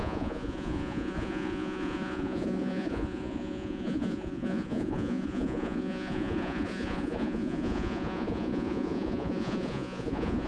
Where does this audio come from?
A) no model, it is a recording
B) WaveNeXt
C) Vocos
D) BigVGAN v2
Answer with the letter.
C